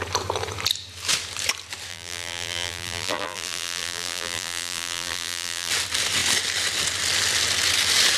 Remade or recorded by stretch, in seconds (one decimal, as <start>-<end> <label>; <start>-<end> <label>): 0.0-1.9 recorded; 1.9-5.7 remade; 5.7-8.2 recorded